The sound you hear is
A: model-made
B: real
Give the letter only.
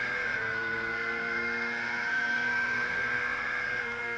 A